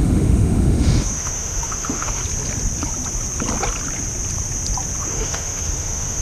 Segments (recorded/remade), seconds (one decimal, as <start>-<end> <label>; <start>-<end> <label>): 0.0-2.2 remade; 2.2-5.0 recorded; 5.0-6.2 remade